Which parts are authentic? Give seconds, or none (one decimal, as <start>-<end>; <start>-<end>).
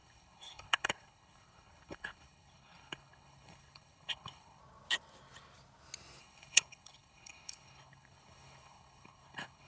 4.6-6.2